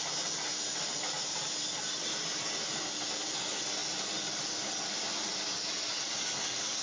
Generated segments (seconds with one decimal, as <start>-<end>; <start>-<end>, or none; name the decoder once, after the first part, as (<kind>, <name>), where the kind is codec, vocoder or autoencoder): none